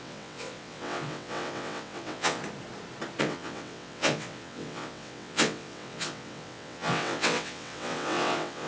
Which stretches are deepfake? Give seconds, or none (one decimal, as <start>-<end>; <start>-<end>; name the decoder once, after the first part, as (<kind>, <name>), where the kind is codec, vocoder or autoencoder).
0.0-2.4 (vocoder, WaveNeXt); 3.2-8.7